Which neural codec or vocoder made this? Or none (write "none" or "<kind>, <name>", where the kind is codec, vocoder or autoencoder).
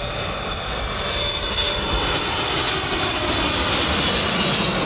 none